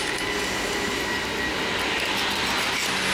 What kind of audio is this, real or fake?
real